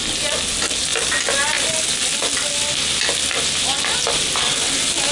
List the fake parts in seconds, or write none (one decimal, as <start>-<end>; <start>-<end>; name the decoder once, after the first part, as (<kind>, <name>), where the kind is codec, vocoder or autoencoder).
none